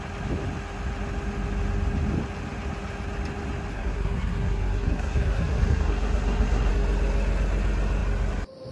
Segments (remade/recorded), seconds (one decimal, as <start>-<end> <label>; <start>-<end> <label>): 0.0-3.7 recorded; 3.7-6.7 remade; 6.7-8.7 recorded